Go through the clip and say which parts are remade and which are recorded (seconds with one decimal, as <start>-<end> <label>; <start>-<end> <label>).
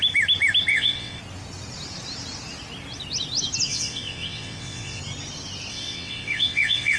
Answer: 0.0-0.7 recorded; 0.7-1.2 remade; 1.2-3.7 recorded; 3.7-5.0 remade; 5.0-5.7 recorded; 5.7-7.0 remade